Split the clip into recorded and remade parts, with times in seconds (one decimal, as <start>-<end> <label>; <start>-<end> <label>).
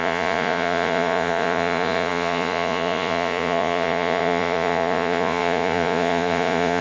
0.0-6.8 remade